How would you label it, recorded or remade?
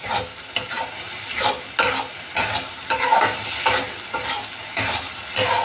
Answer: recorded